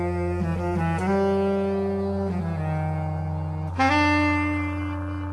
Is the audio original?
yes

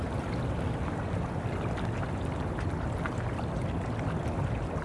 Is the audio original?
yes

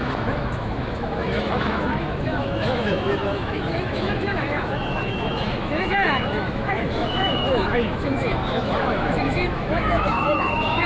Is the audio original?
no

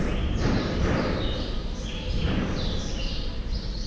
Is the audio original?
no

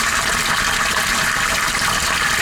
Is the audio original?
yes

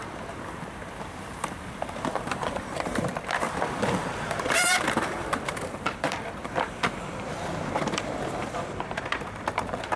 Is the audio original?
no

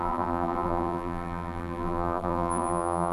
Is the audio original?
no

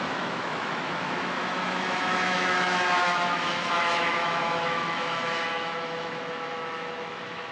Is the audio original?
no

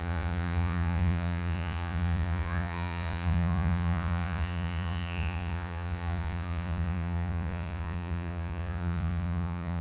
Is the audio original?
no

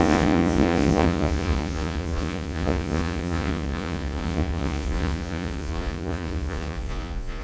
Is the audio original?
no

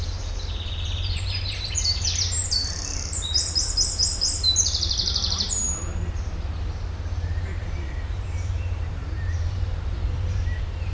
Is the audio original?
no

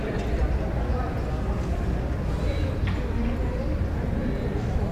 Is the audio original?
yes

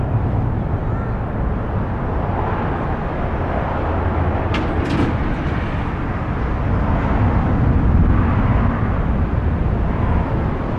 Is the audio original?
yes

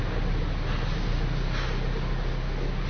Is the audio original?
yes